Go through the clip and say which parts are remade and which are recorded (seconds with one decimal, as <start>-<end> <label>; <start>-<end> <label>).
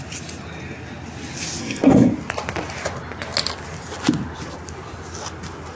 0.0-1.6 recorded; 1.6-2.1 remade; 2.1-5.8 recorded